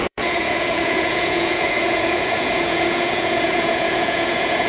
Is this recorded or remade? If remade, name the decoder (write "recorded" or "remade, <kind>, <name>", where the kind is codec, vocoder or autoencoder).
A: remade, vocoder, Vocos